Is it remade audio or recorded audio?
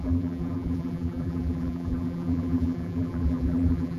remade